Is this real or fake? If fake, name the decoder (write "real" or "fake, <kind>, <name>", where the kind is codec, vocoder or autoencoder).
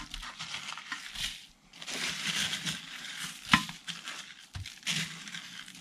fake, vocoder, BigVGAN v2